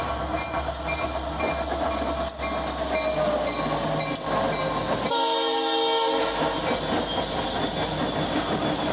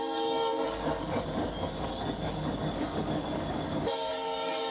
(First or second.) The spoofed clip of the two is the second